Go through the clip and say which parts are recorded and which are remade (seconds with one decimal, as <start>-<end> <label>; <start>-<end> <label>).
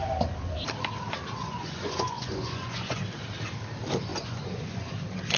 0.0-1.4 recorded; 1.4-3.0 remade; 3.0-4.1 recorded; 4.1-4.9 remade; 4.9-5.4 recorded